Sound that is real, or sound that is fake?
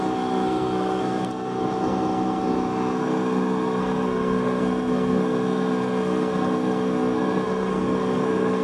fake